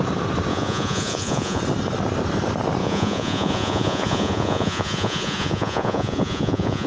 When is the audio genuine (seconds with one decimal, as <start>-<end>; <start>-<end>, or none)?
0.0-0.5; 1.6-2.8